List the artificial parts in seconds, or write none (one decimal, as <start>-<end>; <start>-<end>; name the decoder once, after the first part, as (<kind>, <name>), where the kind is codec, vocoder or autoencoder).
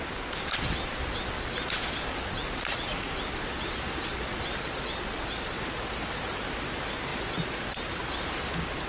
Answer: 2.4-3.1 (vocoder, Vocos)